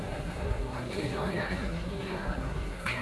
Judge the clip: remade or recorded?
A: remade